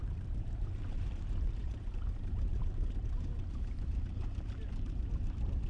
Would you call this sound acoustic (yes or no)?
no